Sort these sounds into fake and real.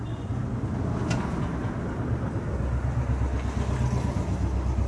real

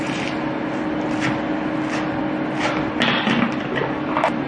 real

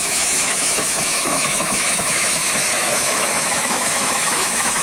fake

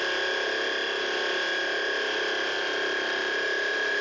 real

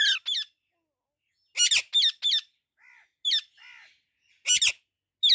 real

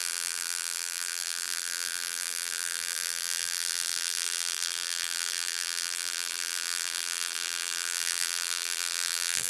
fake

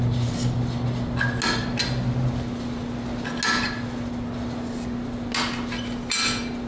real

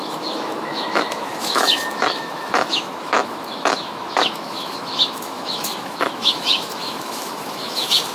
fake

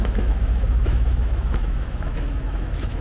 fake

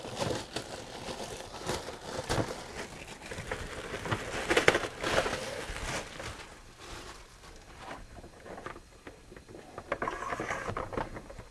real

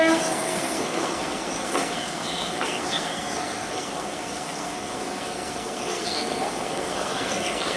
fake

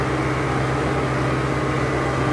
real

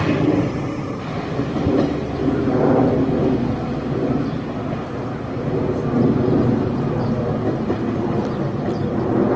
real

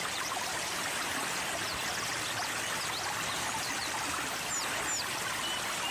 real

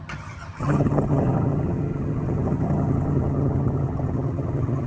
fake